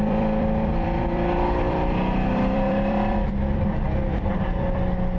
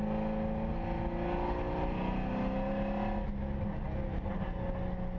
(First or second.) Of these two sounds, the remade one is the first